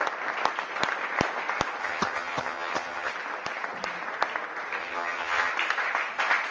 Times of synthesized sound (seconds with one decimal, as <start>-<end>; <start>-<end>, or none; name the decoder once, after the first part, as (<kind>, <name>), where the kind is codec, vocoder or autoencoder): 1.8-3.1 (vocoder, HiFi-GAN); 4.8-5.5